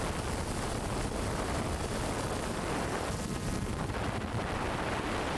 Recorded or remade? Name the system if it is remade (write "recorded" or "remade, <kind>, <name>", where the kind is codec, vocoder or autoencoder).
recorded